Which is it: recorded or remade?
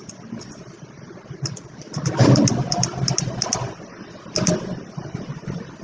recorded